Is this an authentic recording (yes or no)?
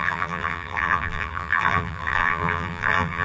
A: no